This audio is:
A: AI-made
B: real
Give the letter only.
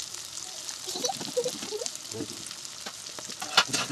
B